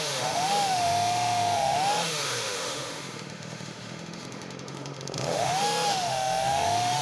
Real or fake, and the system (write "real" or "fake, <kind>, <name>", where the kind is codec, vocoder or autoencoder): fake, autoencoder, DAC-VAE